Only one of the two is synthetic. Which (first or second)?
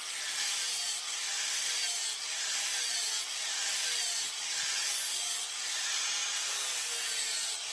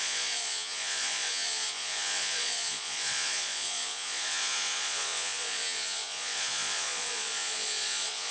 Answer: second